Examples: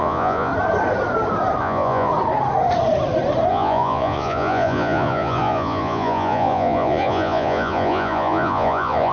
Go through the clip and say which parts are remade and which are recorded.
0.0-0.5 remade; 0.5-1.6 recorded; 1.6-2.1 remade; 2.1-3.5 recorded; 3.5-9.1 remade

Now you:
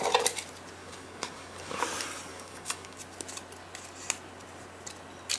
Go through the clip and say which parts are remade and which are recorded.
0.0-0.8 recorded; 0.8-1.8 remade; 1.8-2.3 recorded; 2.3-3.0 remade; 3.0-5.4 recorded